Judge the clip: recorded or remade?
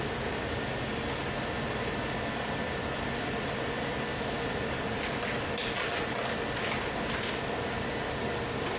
recorded